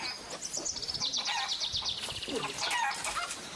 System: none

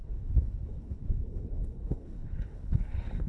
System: codec, HILCodec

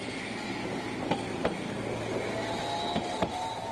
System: none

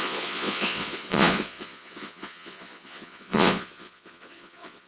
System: vocoder, Vocos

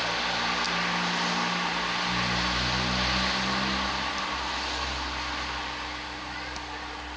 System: none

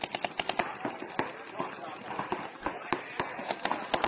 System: none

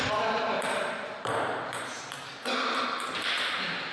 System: vocoder, BigVGAN v2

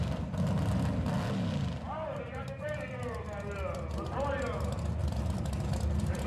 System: none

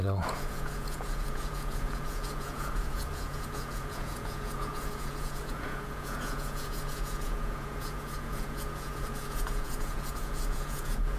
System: vocoder, Vocos